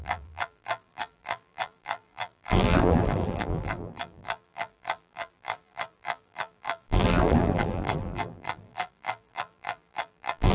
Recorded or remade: remade